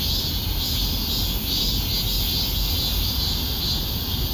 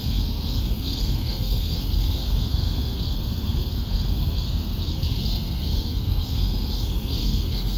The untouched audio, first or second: first